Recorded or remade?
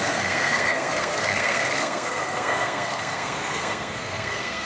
remade